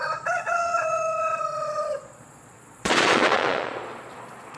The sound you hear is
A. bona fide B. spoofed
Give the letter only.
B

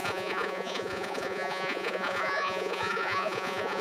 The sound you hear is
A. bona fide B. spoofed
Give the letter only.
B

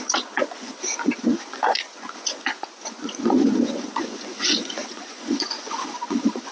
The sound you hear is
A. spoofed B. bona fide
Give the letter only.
A